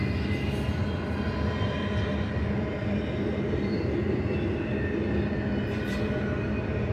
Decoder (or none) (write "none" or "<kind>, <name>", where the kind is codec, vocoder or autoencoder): none